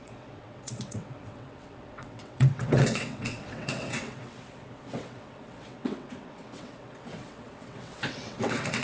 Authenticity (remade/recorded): remade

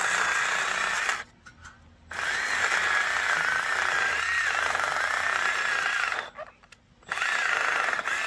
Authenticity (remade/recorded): recorded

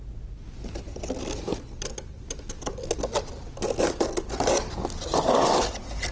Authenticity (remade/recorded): recorded